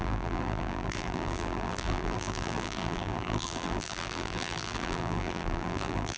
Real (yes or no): no